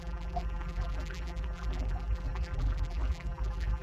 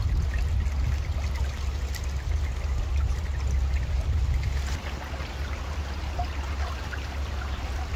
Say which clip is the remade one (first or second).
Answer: first